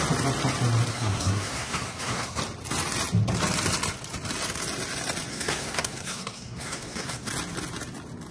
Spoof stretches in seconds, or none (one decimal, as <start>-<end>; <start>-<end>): 0.9-2.4; 5.3-7.3